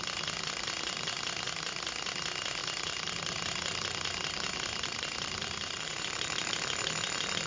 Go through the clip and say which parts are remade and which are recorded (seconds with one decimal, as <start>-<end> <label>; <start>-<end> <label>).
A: 0.0-2.6 recorded; 2.6-6.5 remade; 6.5-7.5 recorded